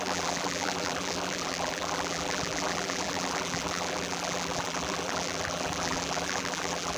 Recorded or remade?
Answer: remade